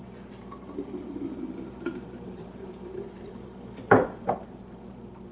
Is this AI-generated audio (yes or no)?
yes